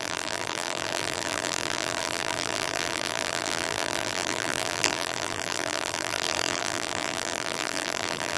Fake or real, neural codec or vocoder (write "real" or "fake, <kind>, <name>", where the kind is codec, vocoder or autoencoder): fake, vocoder, BigVGAN v2